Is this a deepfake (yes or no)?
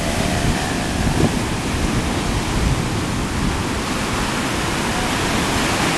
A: no